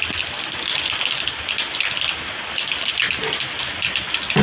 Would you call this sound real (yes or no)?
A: yes